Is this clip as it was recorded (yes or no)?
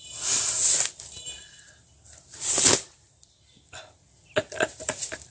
yes